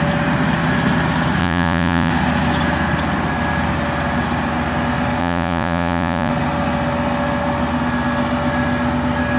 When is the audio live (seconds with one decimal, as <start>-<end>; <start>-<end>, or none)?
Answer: 0.0-1.4; 2.1-5.2; 6.3-9.4